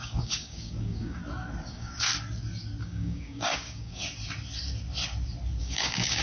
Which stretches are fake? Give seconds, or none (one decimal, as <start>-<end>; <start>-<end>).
0.0-1.2; 1.7-2.1; 2.8-4.0; 5.6-6.2